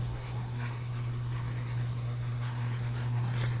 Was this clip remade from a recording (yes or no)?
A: yes